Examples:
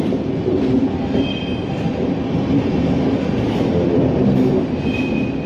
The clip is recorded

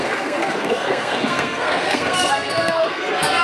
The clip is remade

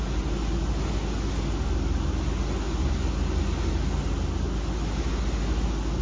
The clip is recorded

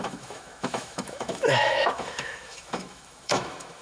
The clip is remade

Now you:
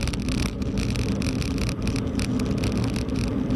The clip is recorded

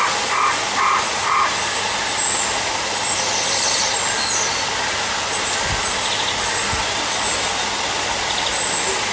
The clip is recorded